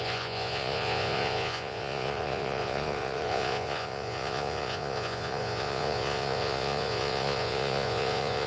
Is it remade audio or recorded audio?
remade